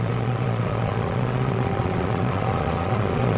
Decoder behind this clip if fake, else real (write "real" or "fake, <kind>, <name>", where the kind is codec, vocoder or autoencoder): fake, vocoder, Vocos